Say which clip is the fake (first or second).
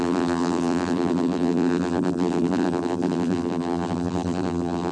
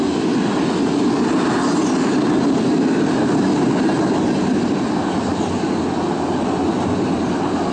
first